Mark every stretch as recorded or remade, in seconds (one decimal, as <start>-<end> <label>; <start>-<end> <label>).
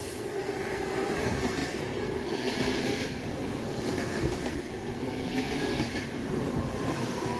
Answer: 0.0-5.9 remade; 5.9-6.5 recorded; 6.5-7.4 remade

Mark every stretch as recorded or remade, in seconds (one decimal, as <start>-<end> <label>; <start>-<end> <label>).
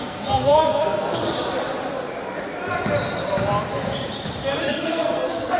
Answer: 0.0-1.2 remade; 1.2-4.6 recorded; 4.6-5.6 remade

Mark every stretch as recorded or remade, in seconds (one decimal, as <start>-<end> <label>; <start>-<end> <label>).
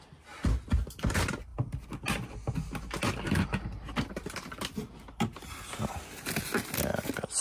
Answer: 0.0-7.4 recorded